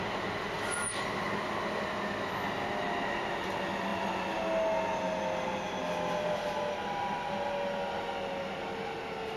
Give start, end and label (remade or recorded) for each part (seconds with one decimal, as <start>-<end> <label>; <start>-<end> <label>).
0.0-9.4 recorded

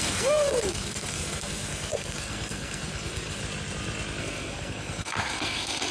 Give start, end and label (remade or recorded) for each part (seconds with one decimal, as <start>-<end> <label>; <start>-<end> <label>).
0.0-3.4 remade; 3.4-4.2 recorded; 4.2-5.9 remade

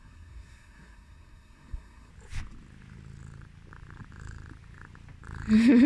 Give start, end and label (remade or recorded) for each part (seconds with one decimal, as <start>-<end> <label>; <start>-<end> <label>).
0.0-2.1 remade; 2.1-5.9 recorded

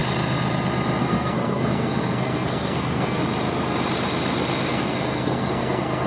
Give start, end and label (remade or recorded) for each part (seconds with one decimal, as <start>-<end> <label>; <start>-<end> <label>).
0.0-1.0 recorded; 1.0-3.2 remade; 3.2-4.7 recorded; 4.7-6.1 remade

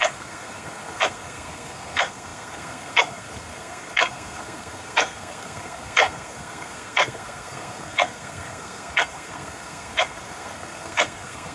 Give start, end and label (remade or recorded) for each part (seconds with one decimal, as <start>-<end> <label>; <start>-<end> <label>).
0.0-11.5 remade

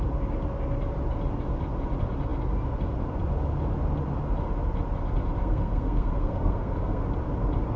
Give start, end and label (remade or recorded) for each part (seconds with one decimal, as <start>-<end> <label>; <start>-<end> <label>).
0.0-5.4 recorded; 5.4-7.0 remade; 7.0-7.8 recorded

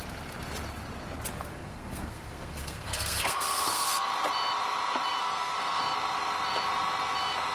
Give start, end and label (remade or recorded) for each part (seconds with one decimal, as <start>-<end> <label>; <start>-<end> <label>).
0.0-1.5 recorded; 1.5-4.1 remade; 4.1-5.2 recorded; 5.2-5.8 remade; 5.8-7.5 recorded